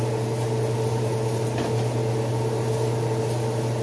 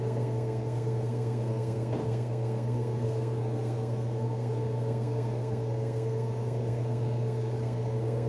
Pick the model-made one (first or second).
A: second